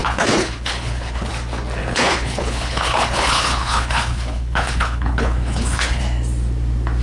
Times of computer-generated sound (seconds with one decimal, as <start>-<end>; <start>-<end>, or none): 0.0-1.3; 1.8-6.0